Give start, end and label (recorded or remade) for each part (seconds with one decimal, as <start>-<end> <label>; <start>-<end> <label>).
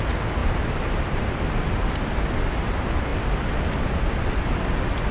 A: 0.0-0.4 recorded; 0.4-1.9 remade; 1.9-5.1 recorded